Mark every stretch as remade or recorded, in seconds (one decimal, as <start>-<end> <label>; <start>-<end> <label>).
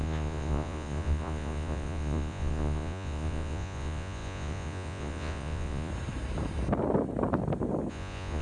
0.0-5.9 remade; 5.9-7.9 recorded; 7.9-8.4 remade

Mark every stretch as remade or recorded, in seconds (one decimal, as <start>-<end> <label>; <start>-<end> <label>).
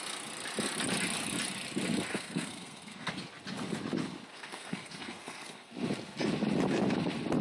0.0-2.1 recorded; 2.1-3.1 remade; 3.1-4.3 recorded; 4.3-5.7 remade; 5.7-7.4 recorded